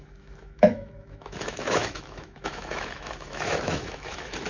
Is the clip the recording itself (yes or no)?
no